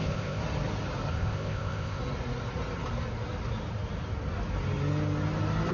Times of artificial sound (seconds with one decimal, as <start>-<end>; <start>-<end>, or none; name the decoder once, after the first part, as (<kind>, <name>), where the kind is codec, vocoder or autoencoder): 0.0-0.4 (codec, ZipCodec); 1.1-2.0